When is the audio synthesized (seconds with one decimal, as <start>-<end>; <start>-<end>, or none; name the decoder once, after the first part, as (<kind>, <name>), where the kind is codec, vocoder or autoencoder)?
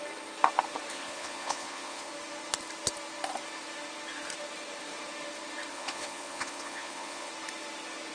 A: 0.9-2.1 (vocoder, Vocos); 5.7-7.3